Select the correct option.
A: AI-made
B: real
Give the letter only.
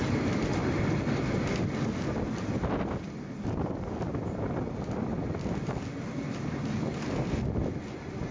B